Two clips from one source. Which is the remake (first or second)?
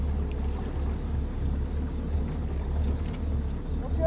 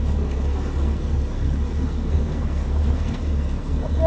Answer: second